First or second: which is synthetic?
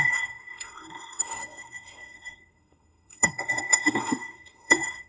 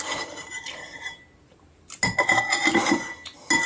first